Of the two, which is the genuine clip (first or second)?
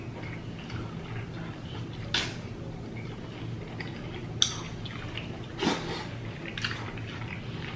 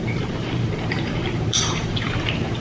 first